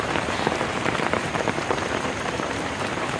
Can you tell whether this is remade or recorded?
remade